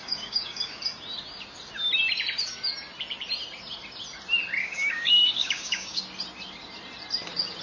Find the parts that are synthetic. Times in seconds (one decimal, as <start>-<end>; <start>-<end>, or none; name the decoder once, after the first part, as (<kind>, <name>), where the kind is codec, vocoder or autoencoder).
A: 0.0-0.8 (codec, DAC); 4.6-6.0